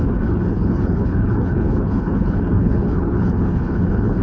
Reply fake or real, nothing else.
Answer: fake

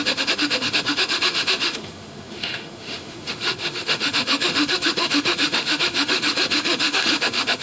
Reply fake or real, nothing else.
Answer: fake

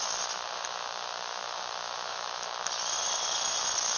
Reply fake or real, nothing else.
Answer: fake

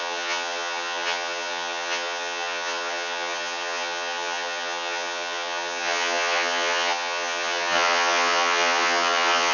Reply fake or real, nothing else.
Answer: fake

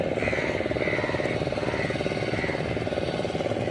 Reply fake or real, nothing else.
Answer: real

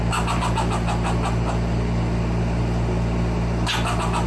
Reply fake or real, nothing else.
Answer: real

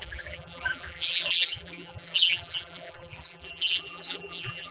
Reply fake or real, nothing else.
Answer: fake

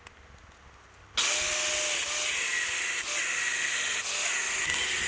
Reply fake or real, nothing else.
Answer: real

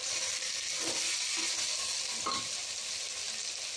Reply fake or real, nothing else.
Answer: real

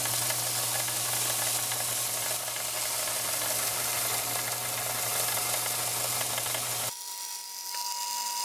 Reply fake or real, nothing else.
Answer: real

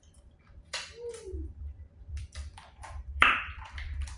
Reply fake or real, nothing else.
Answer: fake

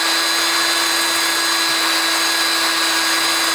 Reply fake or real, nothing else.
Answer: real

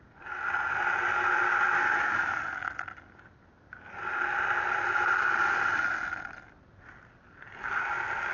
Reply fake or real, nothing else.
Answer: real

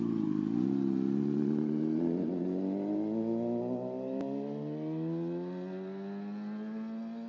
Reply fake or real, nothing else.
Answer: real